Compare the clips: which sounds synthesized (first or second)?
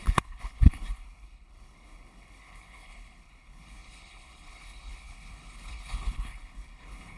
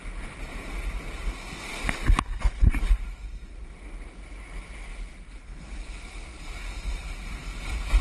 first